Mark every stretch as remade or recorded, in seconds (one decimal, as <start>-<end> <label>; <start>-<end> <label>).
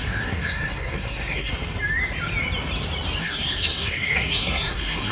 0.0-1.5 remade; 1.5-3.2 recorded; 3.2-5.1 remade